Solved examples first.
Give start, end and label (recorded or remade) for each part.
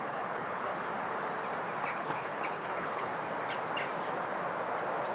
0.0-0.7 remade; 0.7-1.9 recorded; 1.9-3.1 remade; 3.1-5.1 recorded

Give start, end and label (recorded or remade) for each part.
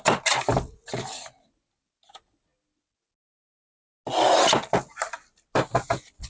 0.0-6.3 recorded